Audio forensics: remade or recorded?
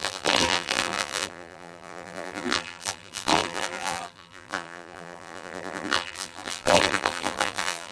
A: remade